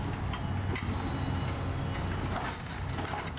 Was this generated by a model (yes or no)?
no